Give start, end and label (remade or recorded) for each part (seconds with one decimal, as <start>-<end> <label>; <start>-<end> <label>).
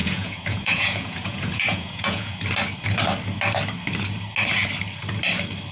0.0-2.4 remade; 2.4-5.7 recorded